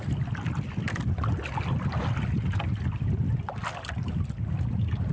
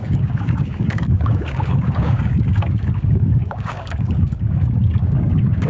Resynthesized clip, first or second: second